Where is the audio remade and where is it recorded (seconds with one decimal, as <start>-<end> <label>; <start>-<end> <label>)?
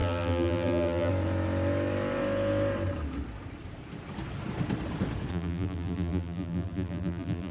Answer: 0.0-1.1 remade; 1.1-5.3 recorded; 5.3-7.5 remade